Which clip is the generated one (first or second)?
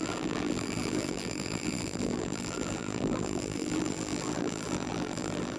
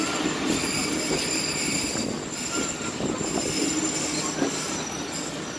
first